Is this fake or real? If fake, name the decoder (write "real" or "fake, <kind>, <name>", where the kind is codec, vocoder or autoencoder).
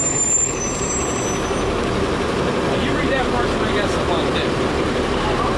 real